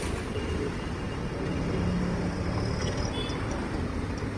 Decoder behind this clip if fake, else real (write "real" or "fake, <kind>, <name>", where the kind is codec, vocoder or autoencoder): real